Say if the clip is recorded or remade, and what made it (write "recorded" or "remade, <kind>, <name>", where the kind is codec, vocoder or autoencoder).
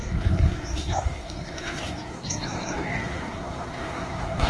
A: remade, codec, SNAC